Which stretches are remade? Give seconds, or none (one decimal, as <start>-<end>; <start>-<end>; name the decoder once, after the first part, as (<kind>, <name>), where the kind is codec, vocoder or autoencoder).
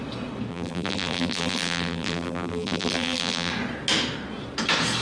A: 0.5-3.5 (vocoder, BigVGAN v2)